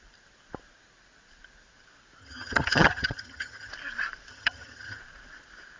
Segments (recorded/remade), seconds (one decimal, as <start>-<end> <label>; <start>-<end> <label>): 0.0-2.2 recorded; 2.2-3.7 remade; 3.7-4.3 recorded; 4.3-5.0 remade; 5.0-5.8 recorded